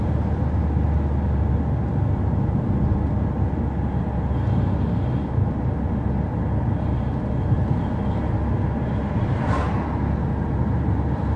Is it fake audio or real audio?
real